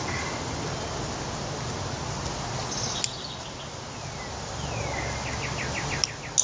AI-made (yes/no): no